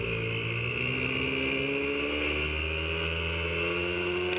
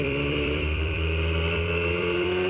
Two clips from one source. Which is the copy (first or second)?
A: second